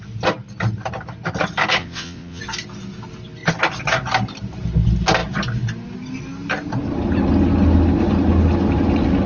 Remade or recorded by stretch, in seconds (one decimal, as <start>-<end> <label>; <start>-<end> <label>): 0.0-1.8 recorded; 1.8-2.4 remade; 2.4-9.3 recorded